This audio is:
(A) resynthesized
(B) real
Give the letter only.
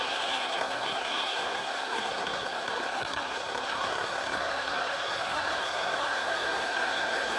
A